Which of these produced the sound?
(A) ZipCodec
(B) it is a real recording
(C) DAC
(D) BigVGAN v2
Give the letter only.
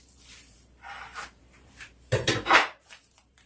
D